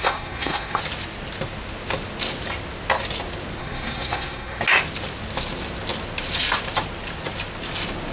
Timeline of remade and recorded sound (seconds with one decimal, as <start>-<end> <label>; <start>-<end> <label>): 0.0-0.8 remade; 0.8-3.6 recorded; 3.6-4.6 remade; 4.6-8.1 recorded